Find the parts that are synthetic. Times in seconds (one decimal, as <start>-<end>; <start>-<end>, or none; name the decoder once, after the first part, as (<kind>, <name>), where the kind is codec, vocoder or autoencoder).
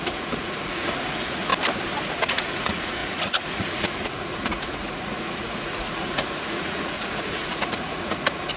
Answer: 0.0-1.5 (vocoder, Vocos); 2.2-8.6